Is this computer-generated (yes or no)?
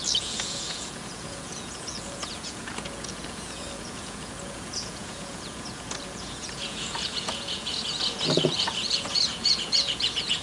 yes